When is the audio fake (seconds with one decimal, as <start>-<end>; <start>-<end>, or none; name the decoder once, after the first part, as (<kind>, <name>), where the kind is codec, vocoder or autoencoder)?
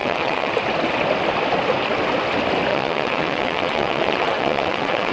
0.0-0.5 (vocoder, WaveNeXt); 2.7-5.1